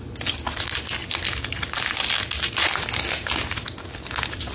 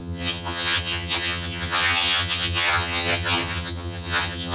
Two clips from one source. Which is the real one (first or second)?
first